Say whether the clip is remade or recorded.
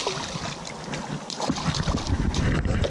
recorded